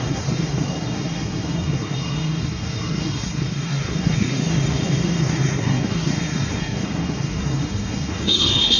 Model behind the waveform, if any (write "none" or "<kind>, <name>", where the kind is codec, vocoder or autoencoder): codec, SNAC